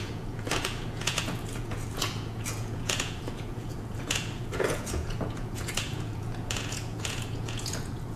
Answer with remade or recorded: remade